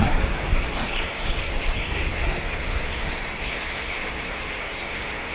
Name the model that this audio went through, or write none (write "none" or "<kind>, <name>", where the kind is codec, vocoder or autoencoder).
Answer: codec, SNAC